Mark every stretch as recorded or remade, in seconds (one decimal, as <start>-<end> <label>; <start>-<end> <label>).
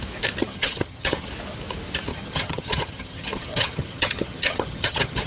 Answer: 0.0-0.4 recorded; 0.4-1.3 remade; 1.3-2.1 recorded; 2.1-5.3 remade